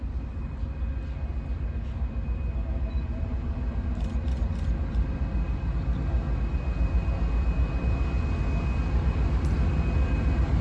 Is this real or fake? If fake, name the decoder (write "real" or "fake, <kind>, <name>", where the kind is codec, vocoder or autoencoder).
real